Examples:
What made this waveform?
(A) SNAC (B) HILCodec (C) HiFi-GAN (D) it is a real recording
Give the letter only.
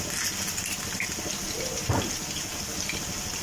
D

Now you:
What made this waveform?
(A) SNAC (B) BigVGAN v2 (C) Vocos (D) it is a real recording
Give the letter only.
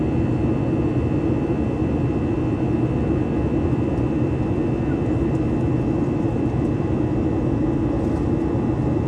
B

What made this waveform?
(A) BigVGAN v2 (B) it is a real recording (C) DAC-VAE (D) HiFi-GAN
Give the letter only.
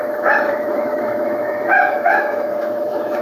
C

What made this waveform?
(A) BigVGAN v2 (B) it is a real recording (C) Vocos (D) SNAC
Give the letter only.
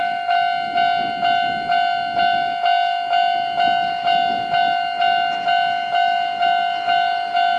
B